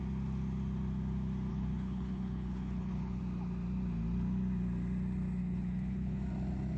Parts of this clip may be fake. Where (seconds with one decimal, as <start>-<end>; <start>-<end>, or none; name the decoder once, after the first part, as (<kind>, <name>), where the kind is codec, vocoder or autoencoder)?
1.5-3.2 (codec, HILCodec); 5.4-6.2